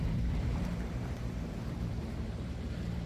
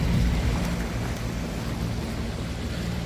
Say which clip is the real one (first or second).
second